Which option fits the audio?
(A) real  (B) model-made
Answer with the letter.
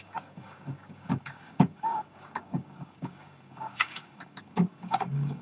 B